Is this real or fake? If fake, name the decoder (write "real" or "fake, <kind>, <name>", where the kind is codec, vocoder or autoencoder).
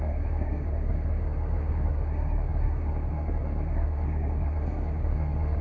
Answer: fake, codec, SNAC